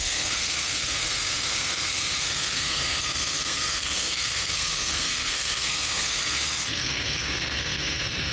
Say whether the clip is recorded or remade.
remade